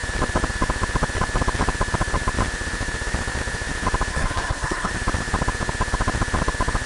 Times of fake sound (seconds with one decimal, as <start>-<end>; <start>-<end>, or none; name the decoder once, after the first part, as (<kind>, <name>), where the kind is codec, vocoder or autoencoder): 4.1-4.9 (codec, SNAC)